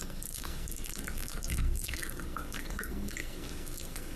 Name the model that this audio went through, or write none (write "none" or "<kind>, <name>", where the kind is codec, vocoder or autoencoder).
codec, SNAC